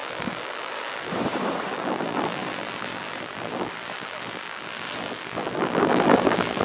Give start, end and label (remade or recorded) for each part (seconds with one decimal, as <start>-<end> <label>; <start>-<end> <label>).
0.0-1.1 remade; 1.1-1.7 recorded; 1.7-6.6 remade